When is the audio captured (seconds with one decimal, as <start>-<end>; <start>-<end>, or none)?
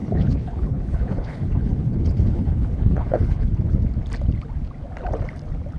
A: 3.5-5.8